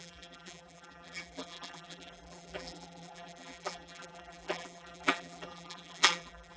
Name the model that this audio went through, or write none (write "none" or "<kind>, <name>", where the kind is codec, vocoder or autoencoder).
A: vocoder, BigVGAN v2